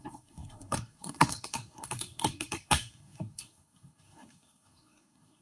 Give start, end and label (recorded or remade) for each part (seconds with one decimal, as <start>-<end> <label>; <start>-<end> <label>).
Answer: 0.0-5.4 remade